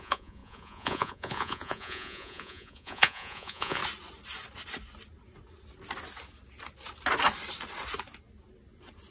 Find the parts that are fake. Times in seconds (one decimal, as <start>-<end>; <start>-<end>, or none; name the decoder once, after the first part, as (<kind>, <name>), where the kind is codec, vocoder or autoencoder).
0.0-3.8 (vocoder, Vocos)